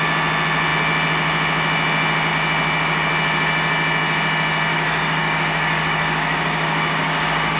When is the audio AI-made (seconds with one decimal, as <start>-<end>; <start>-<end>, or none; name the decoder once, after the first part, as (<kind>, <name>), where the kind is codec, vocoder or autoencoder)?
4.7-7.6 (codec, DAC)